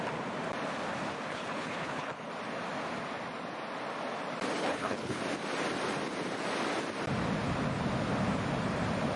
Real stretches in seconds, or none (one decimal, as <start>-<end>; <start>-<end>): 0.0-1.3; 2.3-4.6; 5.2-9.2